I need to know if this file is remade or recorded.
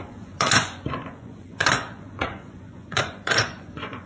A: remade